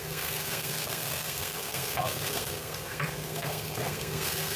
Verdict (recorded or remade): remade